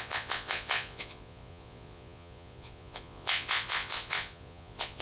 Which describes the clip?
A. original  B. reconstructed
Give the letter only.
B